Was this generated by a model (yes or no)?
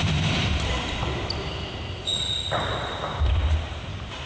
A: no